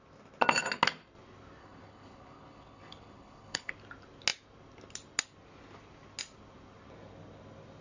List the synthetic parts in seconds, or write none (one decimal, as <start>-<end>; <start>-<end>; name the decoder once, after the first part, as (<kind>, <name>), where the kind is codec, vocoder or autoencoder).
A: 1.6-3.7 (codec, HILCodec)